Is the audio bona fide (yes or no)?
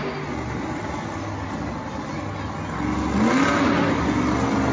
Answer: yes